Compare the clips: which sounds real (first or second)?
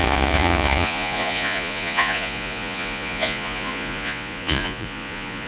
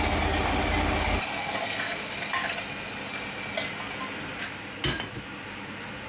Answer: second